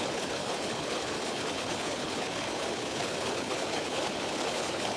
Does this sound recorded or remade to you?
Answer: remade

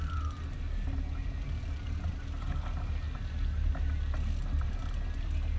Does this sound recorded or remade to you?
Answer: recorded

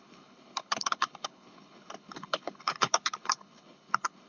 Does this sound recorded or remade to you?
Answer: remade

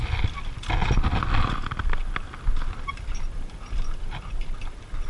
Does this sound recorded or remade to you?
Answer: recorded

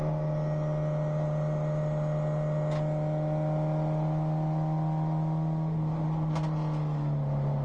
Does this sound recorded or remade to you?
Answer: recorded